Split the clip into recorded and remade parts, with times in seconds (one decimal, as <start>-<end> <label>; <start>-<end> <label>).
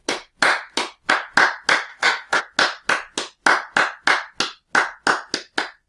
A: 0.0-1.9 recorded; 1.9-2.4 remade; 2.4-5.9 recorded